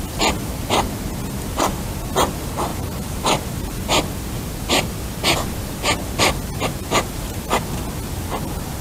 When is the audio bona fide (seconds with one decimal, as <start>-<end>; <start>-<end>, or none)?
0.0-2.7; 3.8-8.8